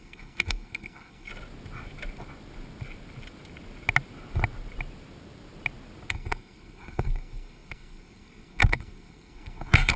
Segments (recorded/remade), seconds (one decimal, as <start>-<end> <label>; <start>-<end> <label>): 0.0-1.3 remade; 1.3-6.1 recorded; 6.1-10.0 remade